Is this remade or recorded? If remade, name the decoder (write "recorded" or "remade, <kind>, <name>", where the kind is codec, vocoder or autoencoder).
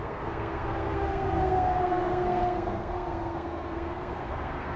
remade, codec, SNAC